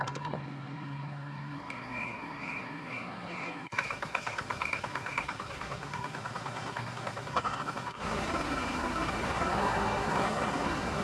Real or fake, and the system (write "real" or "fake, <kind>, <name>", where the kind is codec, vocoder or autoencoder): fake, codec, SNAC